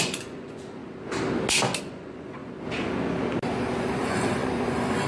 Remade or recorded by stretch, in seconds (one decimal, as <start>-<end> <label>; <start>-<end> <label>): 0.0-0.8 remade; 0.8-1.8 recorded; 1.8-2.4 remade; 2.4-3.8 recorded; 3.8-5.1 remade